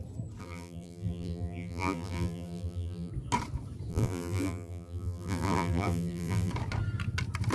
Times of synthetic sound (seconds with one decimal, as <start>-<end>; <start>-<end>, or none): 0.4-3.1; 3.9-6.5